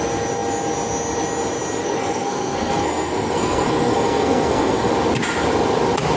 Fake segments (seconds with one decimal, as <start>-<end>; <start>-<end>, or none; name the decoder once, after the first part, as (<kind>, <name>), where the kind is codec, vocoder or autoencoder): 1.8-4.9 (codec, SNAC)